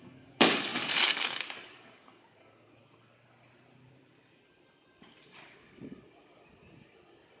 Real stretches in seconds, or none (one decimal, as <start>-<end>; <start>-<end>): 2.8-7.4